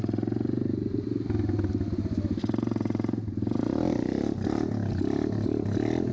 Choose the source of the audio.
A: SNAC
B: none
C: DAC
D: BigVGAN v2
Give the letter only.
B